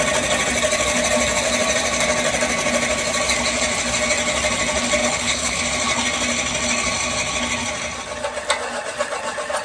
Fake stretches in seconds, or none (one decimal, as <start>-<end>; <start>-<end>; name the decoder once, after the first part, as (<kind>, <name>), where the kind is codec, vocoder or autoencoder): 5.0-5.6 (codec, HILCodec)